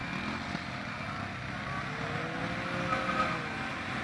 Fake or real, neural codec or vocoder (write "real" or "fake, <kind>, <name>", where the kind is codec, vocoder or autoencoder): real